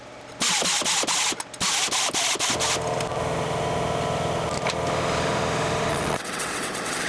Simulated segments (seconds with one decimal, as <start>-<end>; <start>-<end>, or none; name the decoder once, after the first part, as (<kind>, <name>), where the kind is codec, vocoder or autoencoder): 5.9-7.1 (vocoder, WaveNeXt)